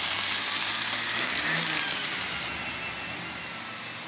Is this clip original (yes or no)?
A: yes